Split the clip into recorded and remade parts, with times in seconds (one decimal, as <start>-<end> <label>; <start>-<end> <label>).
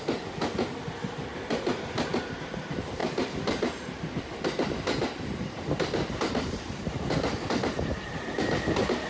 0.0-3.0 recorded; 3.0-7.0 remade; 7.0-9.1 recorded